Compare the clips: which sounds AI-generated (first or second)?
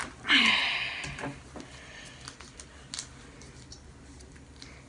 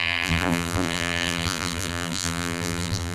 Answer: second